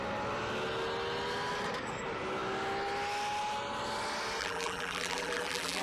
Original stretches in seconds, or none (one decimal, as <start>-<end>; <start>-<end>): 0.0-4.4

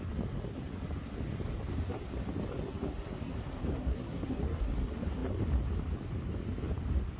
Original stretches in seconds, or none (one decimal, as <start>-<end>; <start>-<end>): 0.0-3.7; 4.7-7.2